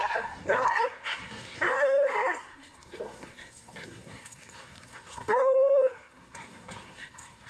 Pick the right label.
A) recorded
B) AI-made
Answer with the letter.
B